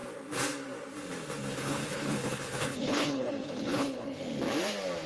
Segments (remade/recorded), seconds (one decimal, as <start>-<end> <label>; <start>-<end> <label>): 0.0-1.5 recorded; 1.5-4.2 remade; 4.2-5.1 recorded